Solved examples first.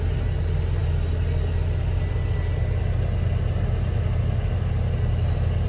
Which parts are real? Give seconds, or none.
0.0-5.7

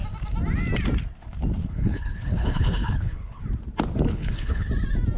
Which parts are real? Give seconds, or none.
0.0-1.6; 3.4-4.1; 4.7-5.2

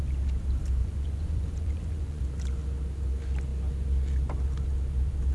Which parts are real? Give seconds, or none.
0.0-0.8; 2.2-5.3

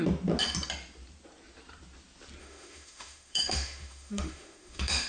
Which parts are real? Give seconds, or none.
0.0-2.4